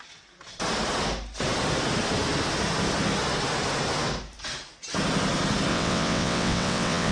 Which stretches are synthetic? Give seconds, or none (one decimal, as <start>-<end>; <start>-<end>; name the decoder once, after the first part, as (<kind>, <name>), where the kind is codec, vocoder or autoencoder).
5.7-7.1 (vocoder, WaveNeXt)